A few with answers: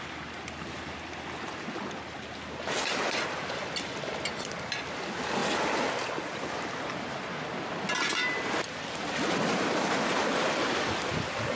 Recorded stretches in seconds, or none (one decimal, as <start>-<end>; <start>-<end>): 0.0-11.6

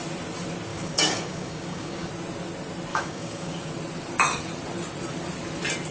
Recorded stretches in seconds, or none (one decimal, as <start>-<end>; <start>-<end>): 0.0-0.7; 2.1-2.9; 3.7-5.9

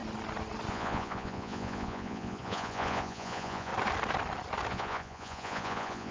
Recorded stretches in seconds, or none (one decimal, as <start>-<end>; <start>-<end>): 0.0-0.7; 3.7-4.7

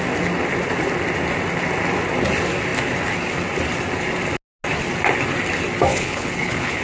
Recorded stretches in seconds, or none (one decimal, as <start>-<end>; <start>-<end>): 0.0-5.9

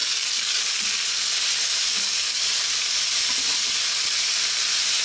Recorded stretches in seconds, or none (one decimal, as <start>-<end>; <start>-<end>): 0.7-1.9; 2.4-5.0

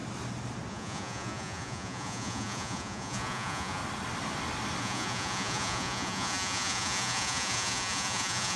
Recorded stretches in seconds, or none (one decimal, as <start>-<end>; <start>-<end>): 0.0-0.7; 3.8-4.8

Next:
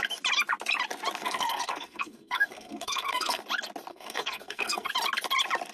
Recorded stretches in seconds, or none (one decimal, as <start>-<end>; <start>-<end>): 0.0-1.2; 3.4-3.9; 4.9-5.7

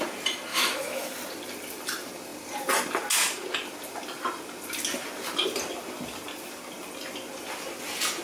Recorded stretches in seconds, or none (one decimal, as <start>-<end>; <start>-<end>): 0.0-0.5; 1.1-8.2